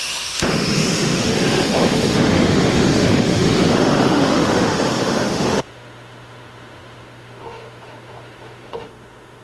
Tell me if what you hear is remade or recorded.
remade